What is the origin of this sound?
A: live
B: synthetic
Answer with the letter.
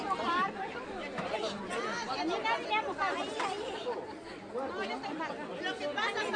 A